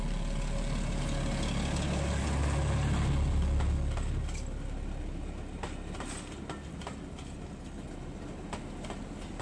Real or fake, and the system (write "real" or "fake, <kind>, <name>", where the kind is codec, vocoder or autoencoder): real